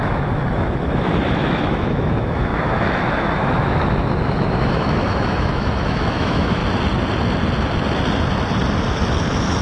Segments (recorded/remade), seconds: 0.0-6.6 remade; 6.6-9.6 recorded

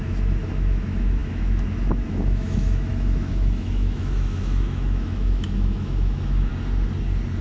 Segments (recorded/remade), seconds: 0.0-6.5 remade; 6.5-7.4 recorded

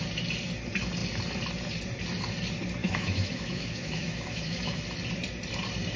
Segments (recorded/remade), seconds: 0.0-2.8 recorded; 2.8-4.8 remade; 4.8-6.0 recorded

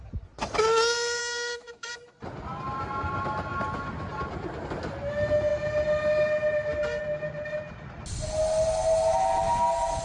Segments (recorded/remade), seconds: 0.0-1.2 recorded; 1.2-1.9 remade; 1.9-10.0 recorded

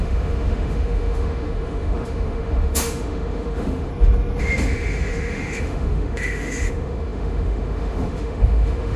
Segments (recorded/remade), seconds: 0.0-3.9 remade; 3.9-4.4 recorded; 4.4-9.0 remade